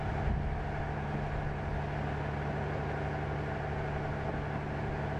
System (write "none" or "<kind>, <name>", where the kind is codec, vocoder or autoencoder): none